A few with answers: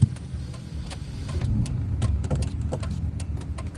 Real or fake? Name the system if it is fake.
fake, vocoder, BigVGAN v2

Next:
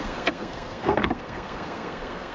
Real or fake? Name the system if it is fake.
fake, codec, SNAC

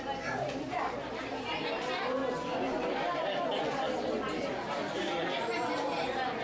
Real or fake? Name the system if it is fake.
real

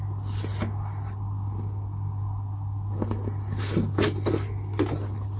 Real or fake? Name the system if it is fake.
real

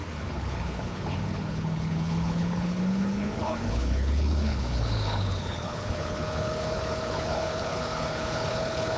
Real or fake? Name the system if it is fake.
fake, codec, HILCodec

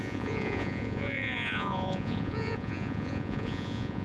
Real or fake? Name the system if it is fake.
fake, vocoder, Vocos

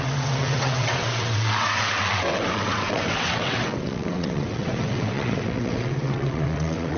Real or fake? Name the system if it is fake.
fake, vocoder, WaveNeXt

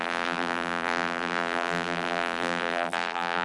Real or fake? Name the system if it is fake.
fake, vocoder, BigVGAN v2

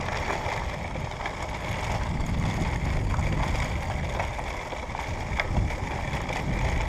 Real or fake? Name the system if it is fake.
real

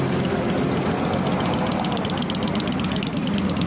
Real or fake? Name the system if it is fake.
real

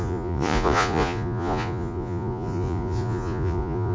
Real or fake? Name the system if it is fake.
fake, vocoder, Vocos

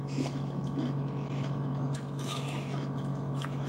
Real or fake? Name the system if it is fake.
fake, autoencoder, DAC-VAE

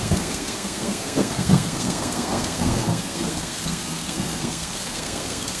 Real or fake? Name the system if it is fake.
fake, codec, SNAC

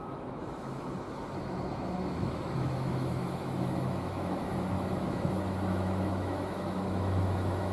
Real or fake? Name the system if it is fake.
fake, autoencoder, DAC-VAE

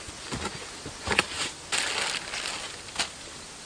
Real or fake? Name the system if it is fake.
real